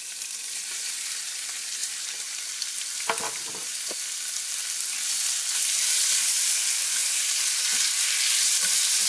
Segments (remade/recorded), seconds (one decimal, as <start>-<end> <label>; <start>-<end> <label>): 0.0-9.1 recorded